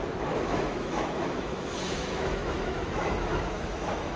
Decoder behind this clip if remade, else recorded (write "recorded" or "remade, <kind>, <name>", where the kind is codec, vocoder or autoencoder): remade, autoencoder, DAC-VAE